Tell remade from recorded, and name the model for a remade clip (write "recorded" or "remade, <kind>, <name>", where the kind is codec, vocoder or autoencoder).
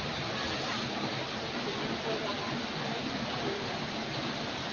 recorded